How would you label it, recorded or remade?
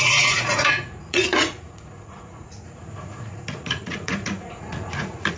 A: remade